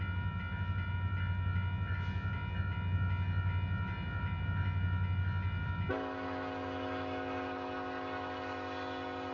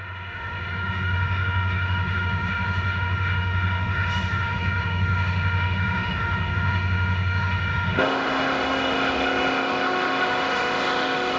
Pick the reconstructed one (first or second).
second